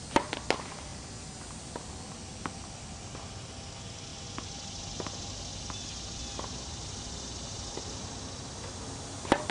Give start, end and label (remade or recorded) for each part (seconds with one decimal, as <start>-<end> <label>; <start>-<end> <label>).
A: 0.0-9.5 recorded

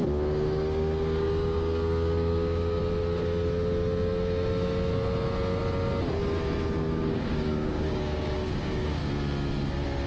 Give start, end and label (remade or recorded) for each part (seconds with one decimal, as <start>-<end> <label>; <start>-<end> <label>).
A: 0.0-2.8 remade; 2.8-6.8 recorded; 6.8-9.0 remade; 9.0-10.1 recorded